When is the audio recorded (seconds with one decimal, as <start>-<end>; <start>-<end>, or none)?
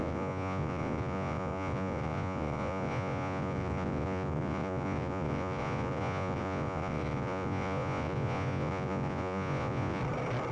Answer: 10.0-10.5